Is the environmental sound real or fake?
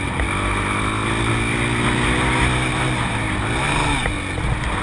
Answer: real